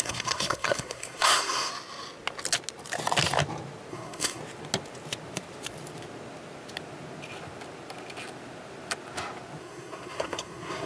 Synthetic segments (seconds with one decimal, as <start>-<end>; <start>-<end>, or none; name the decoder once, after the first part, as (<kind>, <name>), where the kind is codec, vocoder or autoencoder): 0.0-1.7 (codec, SNAC); 3.9-4.4; 9.6-10.9